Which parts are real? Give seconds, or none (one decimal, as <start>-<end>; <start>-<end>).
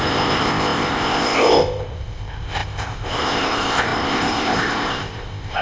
none